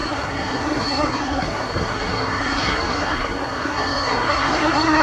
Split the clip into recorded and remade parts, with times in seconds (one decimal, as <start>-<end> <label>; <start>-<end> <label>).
0.0-5.0 remade